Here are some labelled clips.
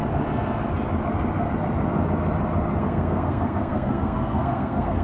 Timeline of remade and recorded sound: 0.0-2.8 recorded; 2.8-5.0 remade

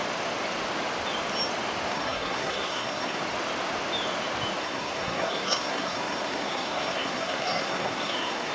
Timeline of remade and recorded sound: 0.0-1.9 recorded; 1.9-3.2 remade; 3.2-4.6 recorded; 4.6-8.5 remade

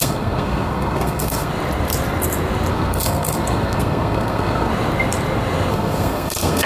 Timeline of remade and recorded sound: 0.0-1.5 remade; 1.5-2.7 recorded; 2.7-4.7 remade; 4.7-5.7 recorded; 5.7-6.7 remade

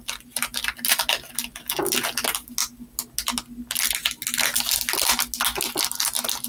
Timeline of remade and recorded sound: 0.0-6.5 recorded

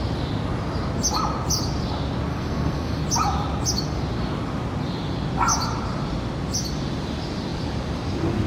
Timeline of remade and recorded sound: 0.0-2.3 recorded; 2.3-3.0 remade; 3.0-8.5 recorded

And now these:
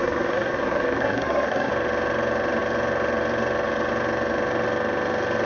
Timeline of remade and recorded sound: 0.0-1.7 remade; 1.7-5.5 recorded

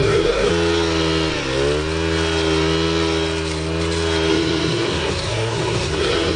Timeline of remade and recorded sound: 0.0-0.5 remade; 0.5-4.3 recorded; 4.3-6.4 remade

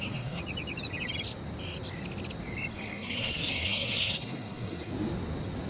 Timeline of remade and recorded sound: 0.0-0.4 remade; 0.4-2.7 recorded; 2.7-4.9 remade; 4.9-5.7 recorded